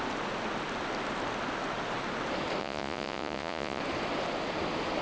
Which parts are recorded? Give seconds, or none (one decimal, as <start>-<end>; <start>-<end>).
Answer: 0.0-2.6; 3.8-5.0